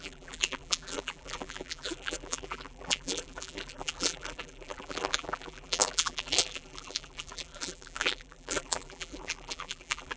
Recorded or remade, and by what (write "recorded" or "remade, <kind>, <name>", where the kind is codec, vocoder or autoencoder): remade, vocoder, BigVGAN v2